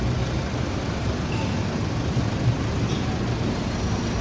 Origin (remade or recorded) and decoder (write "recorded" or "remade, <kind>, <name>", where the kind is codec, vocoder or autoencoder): recorded